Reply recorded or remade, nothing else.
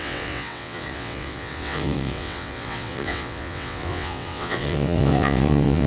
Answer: remade